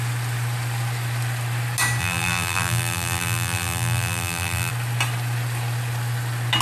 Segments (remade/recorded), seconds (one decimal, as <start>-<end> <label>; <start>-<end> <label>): 0.0-2.0 recorded; 2.0-4.7 remade; 4.7-6.6 recorded